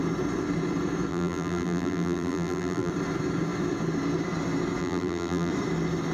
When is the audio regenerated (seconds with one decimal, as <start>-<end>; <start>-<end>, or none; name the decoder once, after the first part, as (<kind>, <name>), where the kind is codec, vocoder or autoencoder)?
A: 1.1-2.9 (vocoder, BigVGAN v2); 4.8-5.5

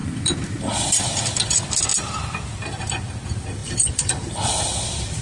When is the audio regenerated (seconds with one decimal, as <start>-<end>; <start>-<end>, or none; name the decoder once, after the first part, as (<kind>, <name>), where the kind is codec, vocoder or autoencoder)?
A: 0.6-1.9 (vocoder, BigVGAN v2); 2.8-5.2

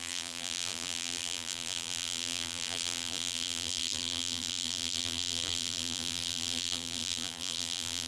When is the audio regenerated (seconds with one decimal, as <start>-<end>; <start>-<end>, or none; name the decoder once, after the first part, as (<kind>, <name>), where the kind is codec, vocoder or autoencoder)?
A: 0.0-8.1 (vocoder, BigVGAN v2)

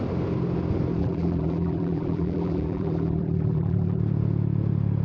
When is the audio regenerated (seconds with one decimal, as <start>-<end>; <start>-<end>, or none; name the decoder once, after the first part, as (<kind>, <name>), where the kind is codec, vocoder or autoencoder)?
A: 1.0-4.0 (vocoder, BigVGAN v2)

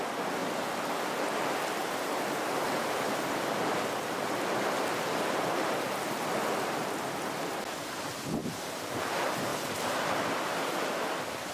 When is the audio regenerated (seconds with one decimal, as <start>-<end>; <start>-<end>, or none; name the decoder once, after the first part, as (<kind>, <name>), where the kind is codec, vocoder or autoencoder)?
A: 1.8-2.8 (vocoder, BigVGAN v2); 8.4-9.1

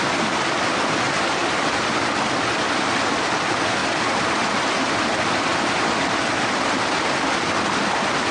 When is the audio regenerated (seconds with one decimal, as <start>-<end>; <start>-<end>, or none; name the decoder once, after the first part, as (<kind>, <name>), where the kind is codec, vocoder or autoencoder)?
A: none

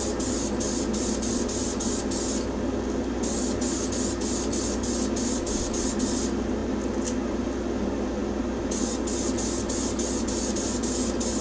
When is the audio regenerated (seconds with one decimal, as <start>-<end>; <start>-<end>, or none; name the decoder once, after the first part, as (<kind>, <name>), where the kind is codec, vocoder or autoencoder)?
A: none